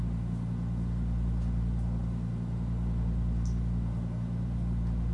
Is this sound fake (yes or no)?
no